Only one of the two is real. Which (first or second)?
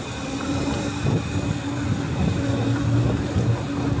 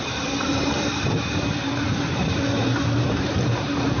first